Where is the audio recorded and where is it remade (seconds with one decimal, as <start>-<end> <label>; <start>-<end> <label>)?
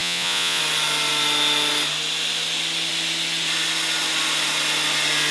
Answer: 0.0-0.6 remade; 0.6-5.3 recorded